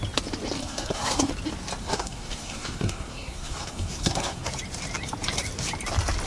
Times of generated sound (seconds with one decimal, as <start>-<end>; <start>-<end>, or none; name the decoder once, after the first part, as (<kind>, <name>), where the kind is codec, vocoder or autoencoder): 0.6-1.3 (codec, SNAC); 1.8-4.5